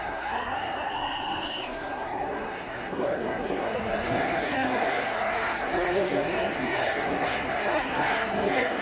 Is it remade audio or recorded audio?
remade